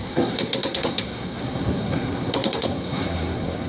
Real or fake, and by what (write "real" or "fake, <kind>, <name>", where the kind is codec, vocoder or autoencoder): fake, codec, SNAC